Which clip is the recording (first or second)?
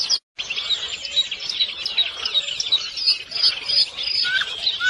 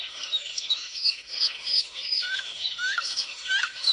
first